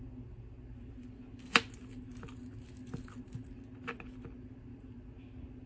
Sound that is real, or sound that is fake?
real